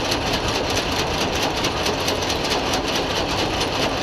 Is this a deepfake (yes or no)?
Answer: no